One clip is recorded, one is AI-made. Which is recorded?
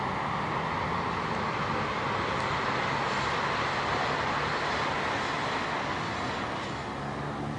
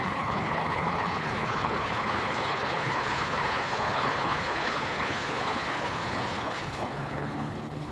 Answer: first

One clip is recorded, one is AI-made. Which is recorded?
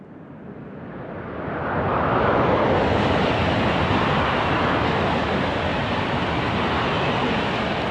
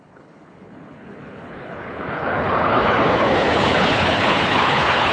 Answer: first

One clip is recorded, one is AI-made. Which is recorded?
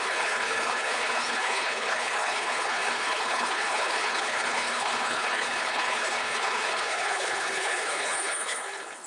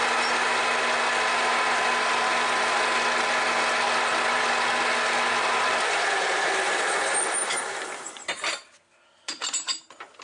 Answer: second